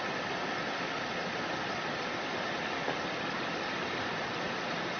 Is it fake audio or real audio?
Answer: real